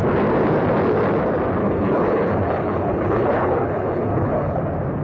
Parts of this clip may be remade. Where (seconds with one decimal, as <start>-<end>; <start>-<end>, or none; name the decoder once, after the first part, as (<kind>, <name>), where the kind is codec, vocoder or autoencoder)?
1.6-4.6 (codec, HILCodec)